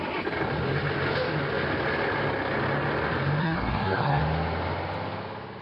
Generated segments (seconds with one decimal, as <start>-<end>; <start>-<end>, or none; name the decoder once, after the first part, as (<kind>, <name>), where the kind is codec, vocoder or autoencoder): 3.4-4.2 (codec, SNAC)